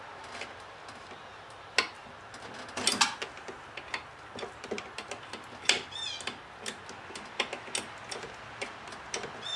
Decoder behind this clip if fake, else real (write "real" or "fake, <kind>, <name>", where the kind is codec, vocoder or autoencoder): real